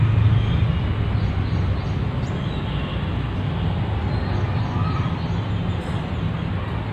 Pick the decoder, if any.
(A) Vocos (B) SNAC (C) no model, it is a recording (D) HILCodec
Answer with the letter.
C